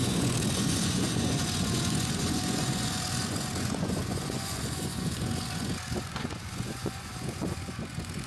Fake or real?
fake